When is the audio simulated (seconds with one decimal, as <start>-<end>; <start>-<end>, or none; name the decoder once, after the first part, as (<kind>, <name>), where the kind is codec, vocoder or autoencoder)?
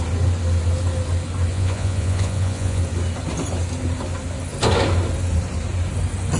1.5-2.8 (vocoder, Vocos)